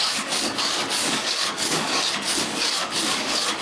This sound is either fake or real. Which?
fake